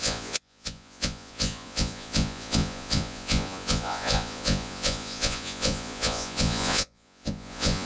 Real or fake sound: fake